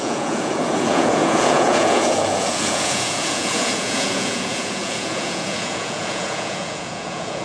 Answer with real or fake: fake